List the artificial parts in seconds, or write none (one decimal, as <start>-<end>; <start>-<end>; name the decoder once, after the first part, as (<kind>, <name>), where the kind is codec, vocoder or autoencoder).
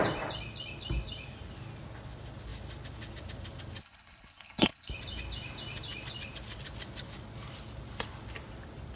3.8-4.9 (codec, HILCodec)